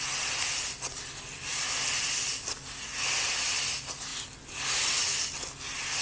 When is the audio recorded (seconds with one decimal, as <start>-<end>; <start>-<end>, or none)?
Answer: 0.0-6.0

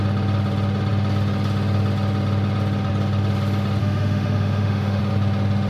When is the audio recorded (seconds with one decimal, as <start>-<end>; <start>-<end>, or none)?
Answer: 0.0-3.8; 5.0-5.7

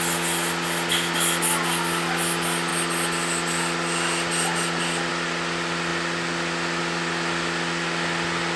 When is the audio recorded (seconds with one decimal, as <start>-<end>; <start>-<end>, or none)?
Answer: 0.0-8.6

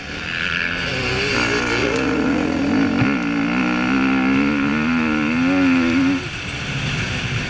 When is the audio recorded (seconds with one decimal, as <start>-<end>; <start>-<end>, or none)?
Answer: 0.0-1.8; 2.6-7.5

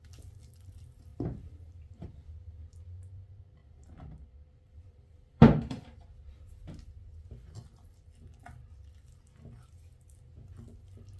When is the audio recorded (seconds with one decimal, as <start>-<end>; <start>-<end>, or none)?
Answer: 0.0-1.1; 2.1-3.6; 5.8-11.2

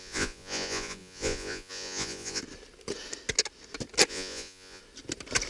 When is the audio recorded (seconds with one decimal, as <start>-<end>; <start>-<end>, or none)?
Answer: 2.4-4.1; 4.8-5.5

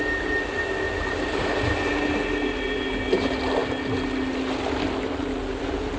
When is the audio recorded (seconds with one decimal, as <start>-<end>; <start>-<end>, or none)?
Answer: 0.0-6.0

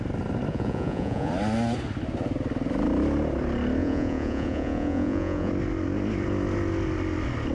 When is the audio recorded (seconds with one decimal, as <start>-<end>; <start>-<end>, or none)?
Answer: 0.0-0.5; 1.3-3.8; 5.5-7.5